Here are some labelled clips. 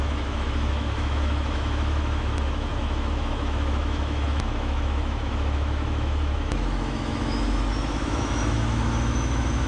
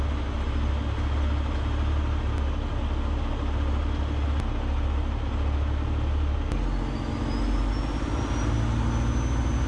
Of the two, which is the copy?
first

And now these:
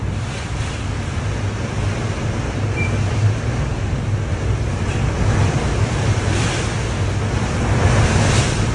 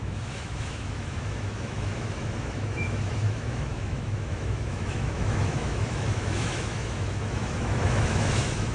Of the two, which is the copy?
second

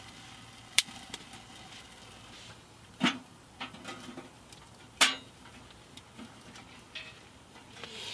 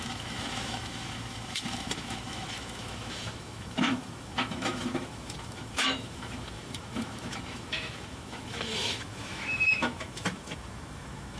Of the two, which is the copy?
second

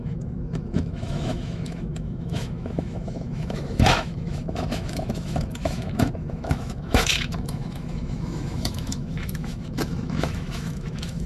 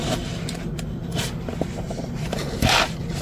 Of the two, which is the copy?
first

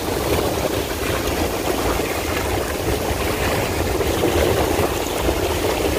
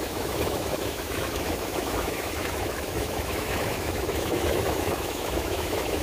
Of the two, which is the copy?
second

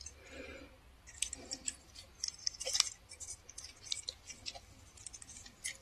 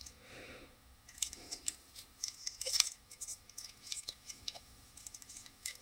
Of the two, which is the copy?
second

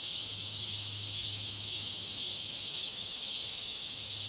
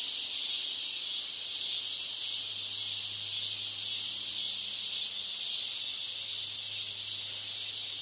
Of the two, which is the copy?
first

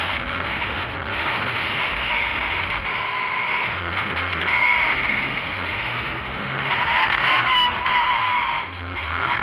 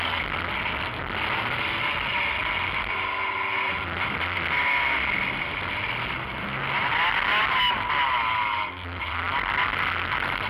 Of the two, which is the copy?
first